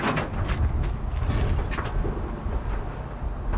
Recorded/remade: recorded